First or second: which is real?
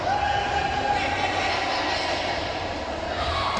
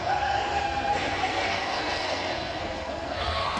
first